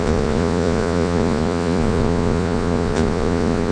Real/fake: fake